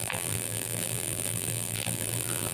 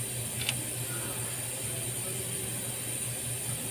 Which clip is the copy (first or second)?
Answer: first